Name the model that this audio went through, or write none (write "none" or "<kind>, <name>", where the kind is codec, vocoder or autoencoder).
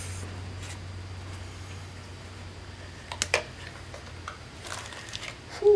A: none